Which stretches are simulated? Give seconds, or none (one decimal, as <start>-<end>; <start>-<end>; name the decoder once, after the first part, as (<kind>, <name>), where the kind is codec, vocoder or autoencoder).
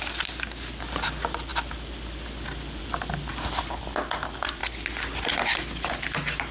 none